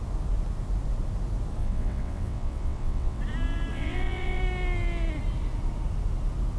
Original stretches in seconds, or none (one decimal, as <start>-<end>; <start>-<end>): 0.0-1.6; 3.2-3.7; 4.4-6.6